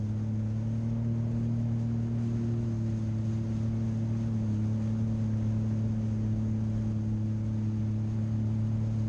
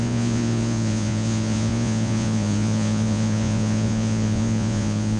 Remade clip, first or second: second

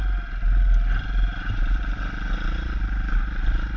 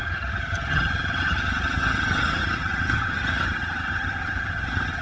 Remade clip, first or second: second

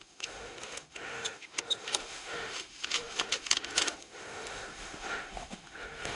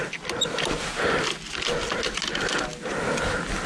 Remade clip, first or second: first